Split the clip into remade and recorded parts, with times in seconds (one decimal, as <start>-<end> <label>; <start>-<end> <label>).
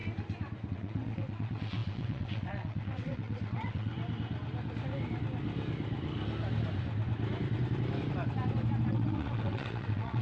0.0-0.7 recorded; 0.7-3.9 remade; 3.9-8.9 recorded; 8.9-10.2 remade